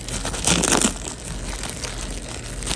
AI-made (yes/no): no